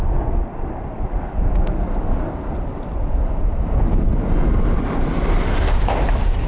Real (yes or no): yes